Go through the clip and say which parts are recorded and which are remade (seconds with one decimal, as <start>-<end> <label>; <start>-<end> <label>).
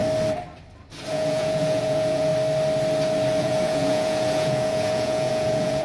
0.0-1.1 recorded; 1.1-2.3 remade; 2.3-3.4 recorded; 3.4-5.8 remade